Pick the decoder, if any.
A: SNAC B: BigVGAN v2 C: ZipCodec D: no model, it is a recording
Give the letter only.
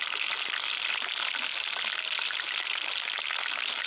D